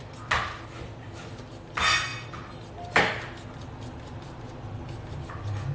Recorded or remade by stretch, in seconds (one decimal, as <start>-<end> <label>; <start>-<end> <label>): 0.0-5.7 recorded